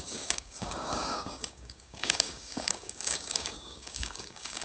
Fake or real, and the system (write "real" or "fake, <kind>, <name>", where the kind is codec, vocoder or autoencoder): fake, codec, DAC